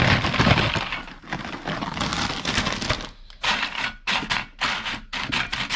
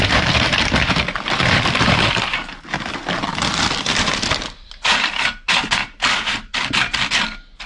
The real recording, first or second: first